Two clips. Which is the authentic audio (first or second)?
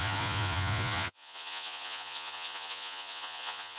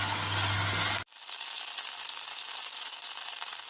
second